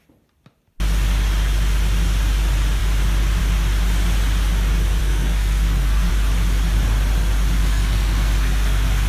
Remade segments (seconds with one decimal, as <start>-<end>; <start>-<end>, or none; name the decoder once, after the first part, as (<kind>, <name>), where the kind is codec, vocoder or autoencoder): 5.0-6.1 (codec, SNAC); 7.6-9.1